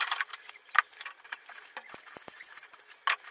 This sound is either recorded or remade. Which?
recorded